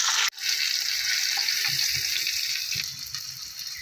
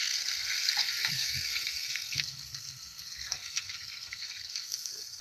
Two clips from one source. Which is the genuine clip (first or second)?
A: first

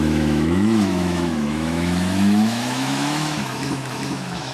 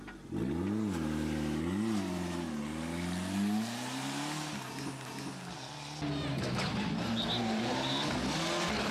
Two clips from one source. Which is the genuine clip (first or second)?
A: second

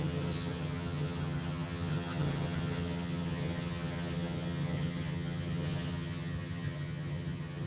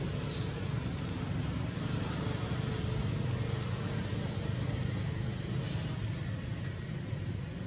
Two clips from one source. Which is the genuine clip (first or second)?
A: second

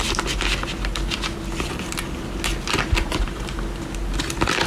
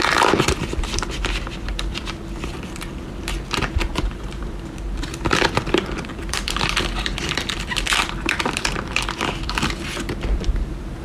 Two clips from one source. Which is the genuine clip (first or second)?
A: first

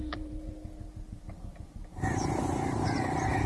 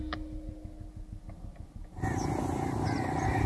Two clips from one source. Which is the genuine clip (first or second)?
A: second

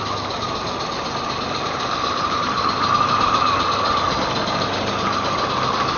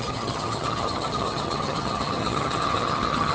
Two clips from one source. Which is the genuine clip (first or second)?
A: first